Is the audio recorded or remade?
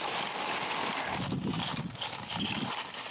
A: recorded